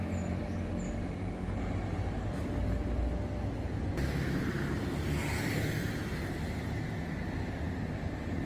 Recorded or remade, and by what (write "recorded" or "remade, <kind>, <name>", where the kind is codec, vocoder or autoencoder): recorded